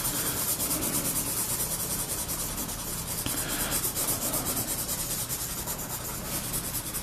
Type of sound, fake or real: real